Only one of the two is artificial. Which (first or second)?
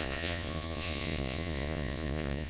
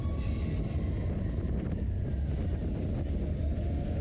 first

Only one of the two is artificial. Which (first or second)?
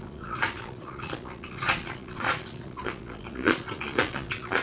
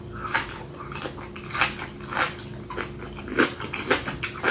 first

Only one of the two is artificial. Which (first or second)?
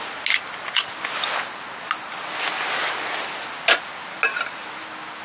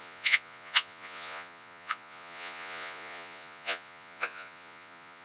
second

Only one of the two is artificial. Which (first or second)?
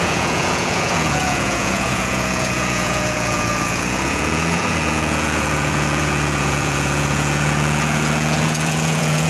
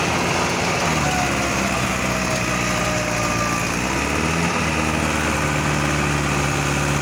first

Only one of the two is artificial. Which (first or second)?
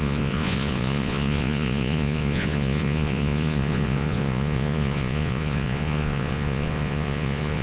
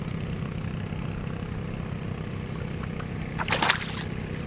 first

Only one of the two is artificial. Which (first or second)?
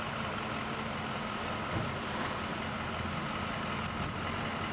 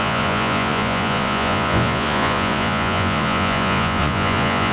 second